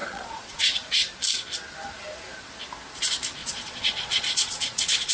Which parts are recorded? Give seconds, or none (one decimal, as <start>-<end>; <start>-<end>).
0.6-3.4